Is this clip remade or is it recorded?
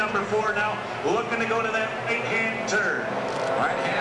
recorded